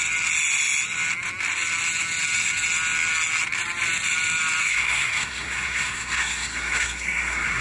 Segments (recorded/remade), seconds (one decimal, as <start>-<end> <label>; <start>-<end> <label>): 0.0-4.6 recorded; 4.6-7.6 remade